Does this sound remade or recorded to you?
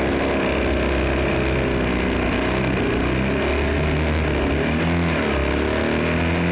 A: recorded